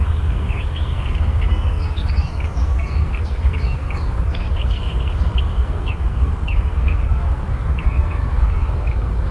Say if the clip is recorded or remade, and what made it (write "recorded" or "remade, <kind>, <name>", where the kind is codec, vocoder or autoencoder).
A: remade, codec, SNAC